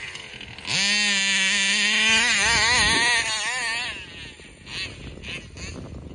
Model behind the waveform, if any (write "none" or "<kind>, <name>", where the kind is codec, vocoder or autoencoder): none